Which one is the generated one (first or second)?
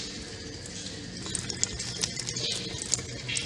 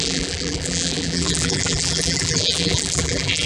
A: second